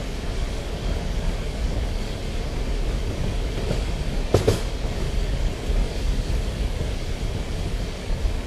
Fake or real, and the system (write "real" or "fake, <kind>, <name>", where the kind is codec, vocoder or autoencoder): fake, codec, DAC